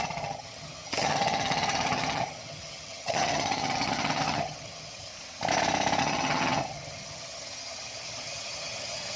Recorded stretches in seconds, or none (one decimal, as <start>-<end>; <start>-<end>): 5.1-6.0